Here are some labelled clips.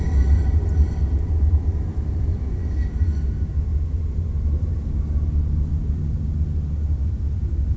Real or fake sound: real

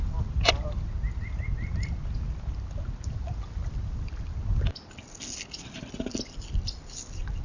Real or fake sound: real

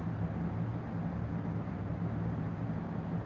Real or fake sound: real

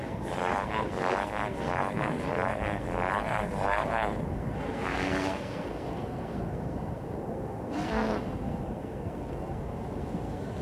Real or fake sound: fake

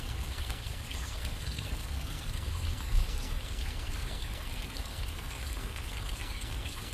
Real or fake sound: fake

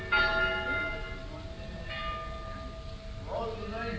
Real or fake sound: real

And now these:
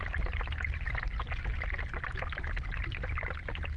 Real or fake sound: real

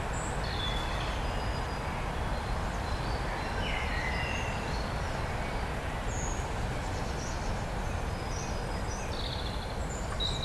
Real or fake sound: real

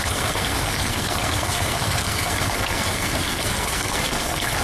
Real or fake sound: fake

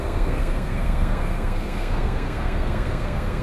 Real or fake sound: fake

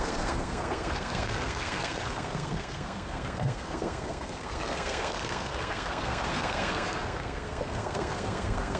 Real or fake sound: fake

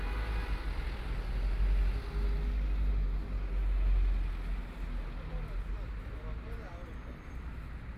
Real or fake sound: real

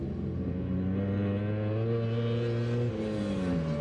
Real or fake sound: real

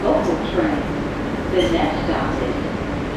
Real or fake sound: real